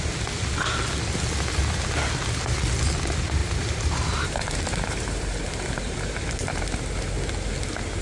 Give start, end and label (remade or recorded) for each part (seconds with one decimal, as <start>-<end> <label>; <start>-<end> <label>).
0.0-3.4 recorded; 3.4-6.6 remade; 6.6-8.0 recorded